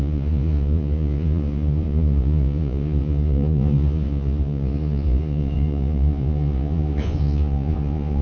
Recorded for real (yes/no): no